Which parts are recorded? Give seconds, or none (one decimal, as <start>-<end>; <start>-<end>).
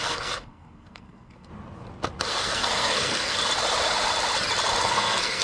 1.5-2.2; 3.4-4.8